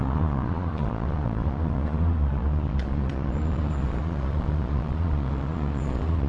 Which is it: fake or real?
fake